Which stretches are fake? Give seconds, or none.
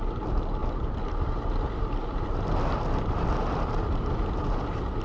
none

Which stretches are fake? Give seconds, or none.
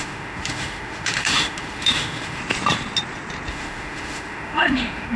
0.0-2.4 (autoencoder, DAC-VAE); 3.5-5.2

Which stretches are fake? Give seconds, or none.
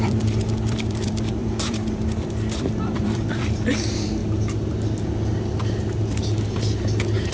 0.0-4.2 (vocoder, BigVGAN v2)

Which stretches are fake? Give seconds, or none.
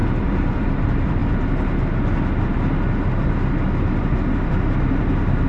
0.0-1.2 (vocoder, BigVGAN v2); 4.5-5.5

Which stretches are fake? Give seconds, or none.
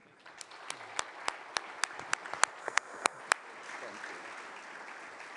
2.6-3.2 (codec, SNAC)